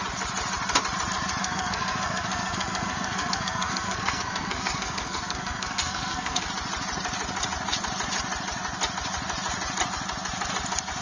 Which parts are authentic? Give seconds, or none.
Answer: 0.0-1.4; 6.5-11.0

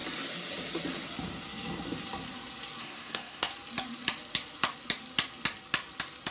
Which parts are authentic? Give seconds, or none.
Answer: 0.0-2.8; 3.5-6.3

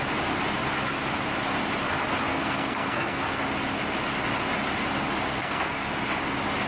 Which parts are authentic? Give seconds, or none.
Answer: 0.0-2.3; 3.4-5.3; 5.9-6.7

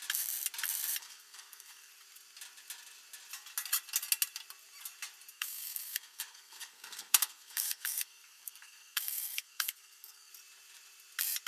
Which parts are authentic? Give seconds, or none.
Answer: 0.0-1.0; 1.9-5.3; 10.3-11.5

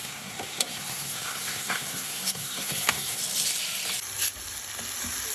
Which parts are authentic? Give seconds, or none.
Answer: 3.2-5.3